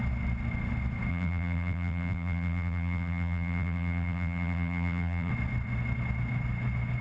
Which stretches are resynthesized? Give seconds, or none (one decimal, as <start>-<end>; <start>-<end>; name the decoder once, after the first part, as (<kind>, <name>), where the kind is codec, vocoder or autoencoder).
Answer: 1.1-5.3 (vocoder, BigVGAN v2)